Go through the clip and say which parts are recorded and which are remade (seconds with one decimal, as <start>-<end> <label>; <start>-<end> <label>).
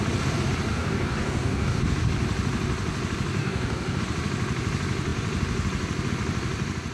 0.0-0.7 recorded; 0.7-1.8 remade; 1.8-3.4 recorded; 3.4-4.0 remade; 4.0-6.9 recorded